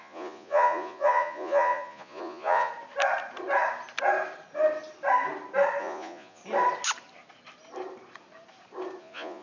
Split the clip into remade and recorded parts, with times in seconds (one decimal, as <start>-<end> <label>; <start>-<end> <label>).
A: 0.0-2.7 remade; 2.7-5.8 recorded; 5.8-6.4 remade; 6.4-9.0 recorded; 9.0-9.4 remade